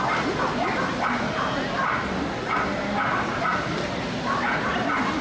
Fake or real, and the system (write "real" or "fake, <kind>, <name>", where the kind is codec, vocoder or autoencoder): real